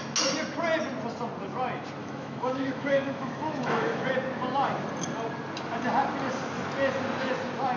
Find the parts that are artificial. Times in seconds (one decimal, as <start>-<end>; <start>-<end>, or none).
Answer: 2.0-4.1